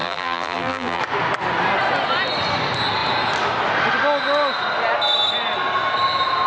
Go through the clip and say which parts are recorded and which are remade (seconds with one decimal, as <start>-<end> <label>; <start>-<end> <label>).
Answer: 0.0-1.0 remade; 1.0-6.5 recorded